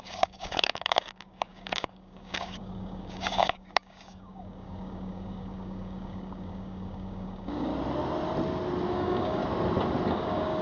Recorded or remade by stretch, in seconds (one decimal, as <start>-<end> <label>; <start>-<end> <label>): 0.0-7.7 remade; 7.7-8.9 recorded; 8.9-9.4 remade; 9.4-10.1 recorded; 10.1-10.6 remade